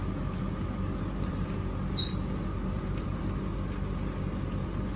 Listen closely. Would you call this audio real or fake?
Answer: real